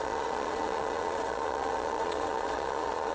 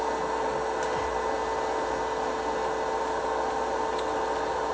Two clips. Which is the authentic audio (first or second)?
second